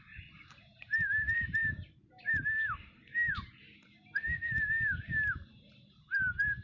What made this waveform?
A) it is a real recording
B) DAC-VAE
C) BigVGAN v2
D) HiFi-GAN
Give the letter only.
C